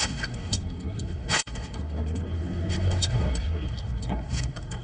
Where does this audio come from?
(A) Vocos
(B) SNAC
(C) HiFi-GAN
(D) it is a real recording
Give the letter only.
B